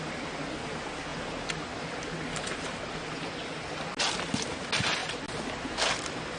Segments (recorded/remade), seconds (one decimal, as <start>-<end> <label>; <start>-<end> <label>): 0.0-6.4 recorded